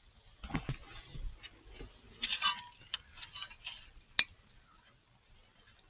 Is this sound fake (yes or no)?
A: no